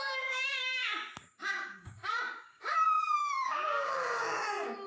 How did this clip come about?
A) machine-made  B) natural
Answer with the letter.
A